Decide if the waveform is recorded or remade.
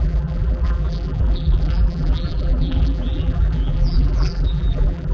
remade